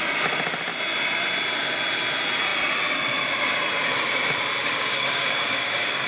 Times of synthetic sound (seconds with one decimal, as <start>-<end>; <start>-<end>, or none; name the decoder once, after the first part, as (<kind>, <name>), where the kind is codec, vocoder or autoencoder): 4.6-6.1 (codec, DAC)